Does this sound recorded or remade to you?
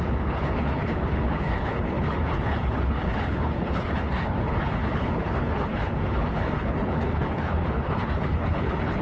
remade